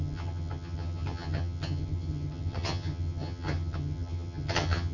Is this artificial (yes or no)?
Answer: yes